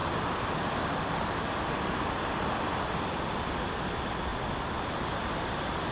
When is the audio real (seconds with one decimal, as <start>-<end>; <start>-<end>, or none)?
3.5-5.9

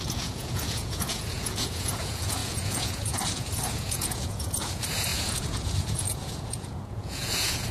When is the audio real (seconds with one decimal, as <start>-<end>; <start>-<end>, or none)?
none